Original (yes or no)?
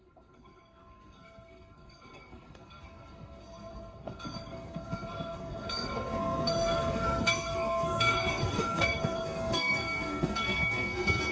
no